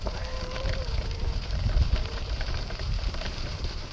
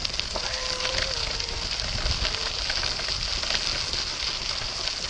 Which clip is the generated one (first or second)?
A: first